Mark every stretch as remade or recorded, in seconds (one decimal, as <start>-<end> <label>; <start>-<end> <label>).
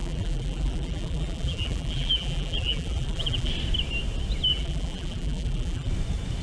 0.0-3.5 remade; 3.5-4.5 recorded; 4.5-5.9 remade; 5.9-6.4 recorded